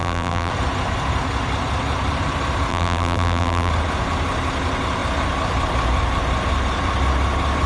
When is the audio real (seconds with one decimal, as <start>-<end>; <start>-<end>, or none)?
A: 0.5-2.7; 3.7-7.7

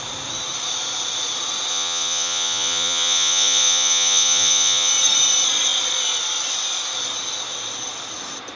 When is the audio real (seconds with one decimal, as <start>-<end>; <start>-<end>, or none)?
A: 0.0-1.7; 4.9-8.6